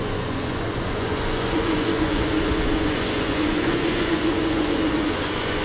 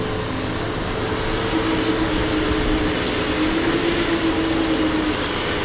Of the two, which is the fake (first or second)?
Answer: first